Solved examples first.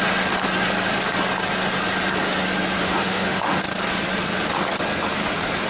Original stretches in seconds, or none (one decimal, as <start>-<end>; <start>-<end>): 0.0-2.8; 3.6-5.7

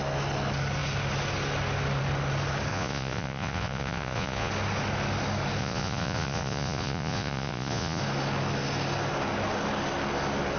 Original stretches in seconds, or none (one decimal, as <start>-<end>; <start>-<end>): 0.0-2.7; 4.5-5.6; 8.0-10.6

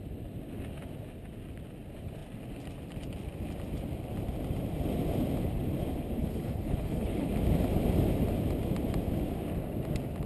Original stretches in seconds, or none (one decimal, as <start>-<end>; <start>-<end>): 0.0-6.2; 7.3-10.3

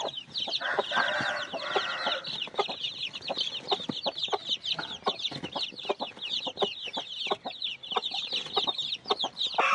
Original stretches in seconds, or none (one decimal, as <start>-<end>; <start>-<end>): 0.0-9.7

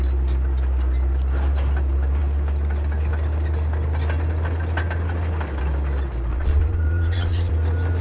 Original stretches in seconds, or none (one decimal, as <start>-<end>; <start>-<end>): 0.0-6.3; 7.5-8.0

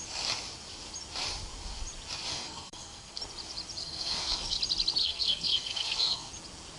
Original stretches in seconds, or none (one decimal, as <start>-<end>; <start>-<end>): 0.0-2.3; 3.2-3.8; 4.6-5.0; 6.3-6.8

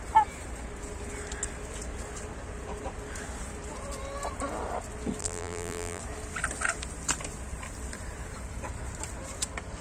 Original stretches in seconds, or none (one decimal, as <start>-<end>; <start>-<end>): 0.0-5.2; 6.0-9.8